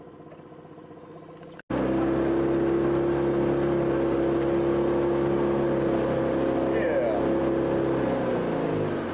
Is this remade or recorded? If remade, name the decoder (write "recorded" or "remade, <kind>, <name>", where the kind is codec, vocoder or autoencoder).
recorded